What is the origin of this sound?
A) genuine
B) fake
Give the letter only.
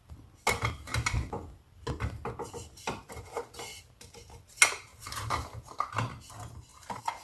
A